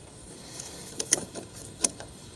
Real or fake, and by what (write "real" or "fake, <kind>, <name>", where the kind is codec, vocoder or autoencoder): fake, codec, DAC